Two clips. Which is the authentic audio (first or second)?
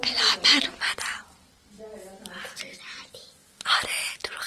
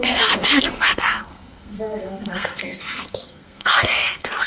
first